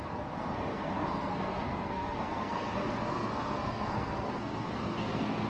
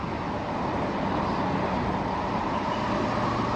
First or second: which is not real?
first